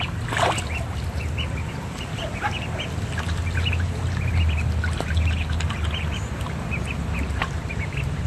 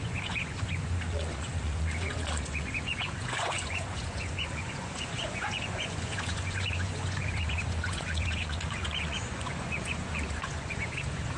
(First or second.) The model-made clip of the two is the second